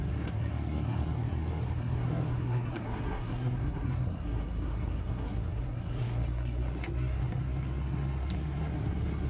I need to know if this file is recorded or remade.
remade